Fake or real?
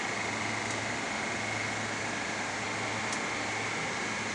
real